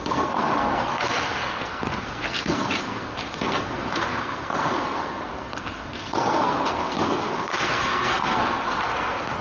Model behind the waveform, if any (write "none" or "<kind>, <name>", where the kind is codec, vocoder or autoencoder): codec, SNAC